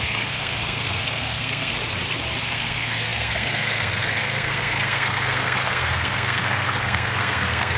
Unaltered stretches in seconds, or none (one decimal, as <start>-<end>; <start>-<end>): 1.7-2.4